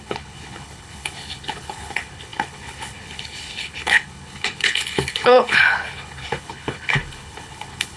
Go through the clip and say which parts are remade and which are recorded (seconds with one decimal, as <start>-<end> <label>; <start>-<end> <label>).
0.0-8.0 remade